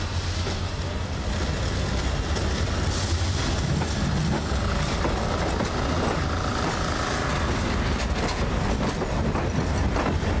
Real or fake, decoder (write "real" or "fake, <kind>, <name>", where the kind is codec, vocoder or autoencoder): real